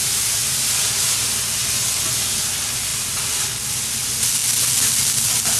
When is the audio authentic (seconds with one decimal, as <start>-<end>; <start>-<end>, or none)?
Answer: 0.0-5.6